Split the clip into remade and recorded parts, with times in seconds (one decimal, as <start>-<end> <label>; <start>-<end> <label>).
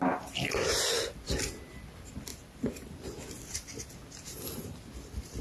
0.0-5.4 recorded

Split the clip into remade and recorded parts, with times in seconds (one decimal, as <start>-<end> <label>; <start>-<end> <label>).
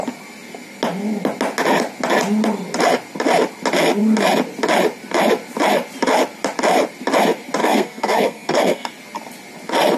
0.0-7.6 recorded; 7.6-8.9 remade; 8.9-10.0 recorded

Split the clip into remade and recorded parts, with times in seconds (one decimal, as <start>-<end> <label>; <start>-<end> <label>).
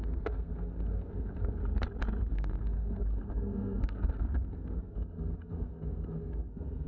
0.0-1.6 remade; 1.6-2.3 recorded; 2.3-6.9 remade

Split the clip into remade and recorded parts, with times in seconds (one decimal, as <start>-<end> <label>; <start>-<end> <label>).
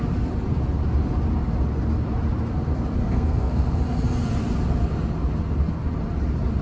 0.0-3.0 recorded; 3.0-3.8 remade; 3.8-6.6 recorded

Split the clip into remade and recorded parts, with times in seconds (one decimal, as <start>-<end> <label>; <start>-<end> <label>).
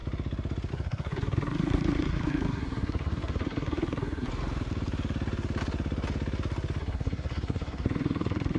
0.0-0.7 recorded; 0.7-4.3 remade; 4.3-6.8 recorded; 6.8-8.6 remade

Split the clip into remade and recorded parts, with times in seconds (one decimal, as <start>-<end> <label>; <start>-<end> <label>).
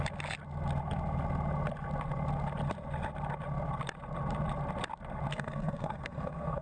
0.0-5.3 recorded; 5.3-6.6 remade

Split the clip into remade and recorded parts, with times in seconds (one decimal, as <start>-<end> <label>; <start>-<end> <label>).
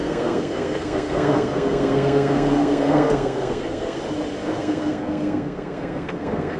0.0-4.0 remade; 4.0-4.4 recorded; 4.4-6.6 remade